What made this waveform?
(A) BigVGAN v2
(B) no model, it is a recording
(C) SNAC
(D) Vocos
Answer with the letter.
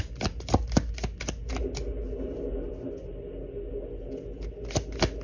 B